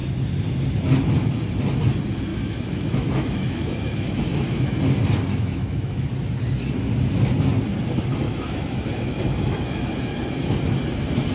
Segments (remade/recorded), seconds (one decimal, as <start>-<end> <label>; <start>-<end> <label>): 0.0-2.3 recorded; 2.3-4.8 remade; 4.8-5.3 recorded; 5.3-6.1 remade; 6.1-8.1 recorded; 8.1-10.5 remade; 10.5-11.3 recorded